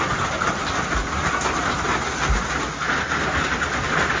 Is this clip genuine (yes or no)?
yes